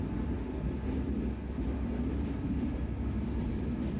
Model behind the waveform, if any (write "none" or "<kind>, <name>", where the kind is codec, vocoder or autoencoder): none